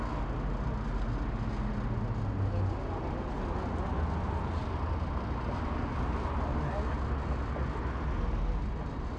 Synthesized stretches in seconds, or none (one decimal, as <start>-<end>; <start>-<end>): none